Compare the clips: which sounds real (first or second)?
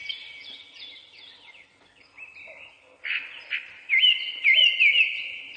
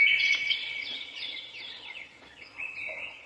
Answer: first